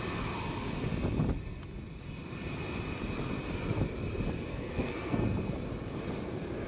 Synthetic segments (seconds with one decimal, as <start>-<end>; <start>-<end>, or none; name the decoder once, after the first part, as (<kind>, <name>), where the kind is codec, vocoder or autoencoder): 4.5-5.2 (codec, SNAC)